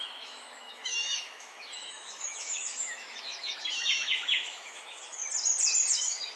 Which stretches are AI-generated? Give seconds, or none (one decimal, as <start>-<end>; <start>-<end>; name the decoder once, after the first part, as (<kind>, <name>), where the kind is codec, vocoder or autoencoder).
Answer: 0.0-5.2 (autoencoder, DAC-VAE); 5.9-6.4